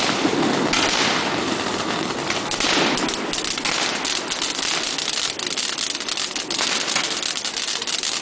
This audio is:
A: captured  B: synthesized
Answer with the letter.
A